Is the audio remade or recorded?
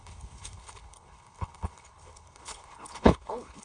remade